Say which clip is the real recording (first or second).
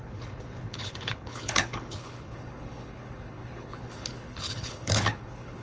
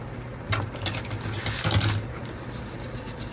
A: second